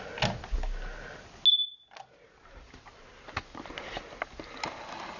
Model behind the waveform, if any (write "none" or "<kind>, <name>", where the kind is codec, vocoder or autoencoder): none